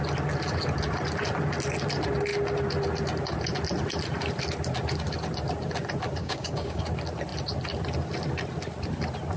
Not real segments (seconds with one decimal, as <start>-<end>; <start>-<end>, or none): 6.2-6.8